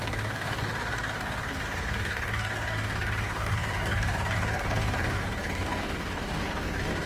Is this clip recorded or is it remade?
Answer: remade